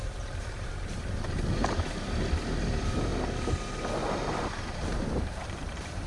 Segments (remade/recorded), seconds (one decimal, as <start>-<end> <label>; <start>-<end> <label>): 0.0-3.1 remade; 3.1-4.0 recorded; 4.0-6.1 remade